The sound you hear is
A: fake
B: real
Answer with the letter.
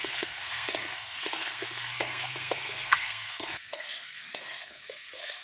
A